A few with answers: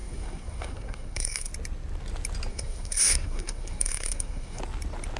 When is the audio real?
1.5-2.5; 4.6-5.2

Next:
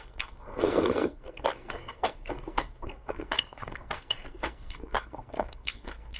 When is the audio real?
none